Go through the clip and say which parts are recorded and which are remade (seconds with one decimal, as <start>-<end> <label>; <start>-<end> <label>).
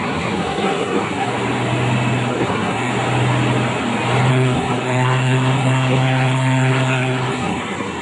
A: 0.0-1.3 remade; 1.3-2.3 recorded; 2.3-2.9 remade; 2.9-4.3 recorded; 4.3-8.0 remade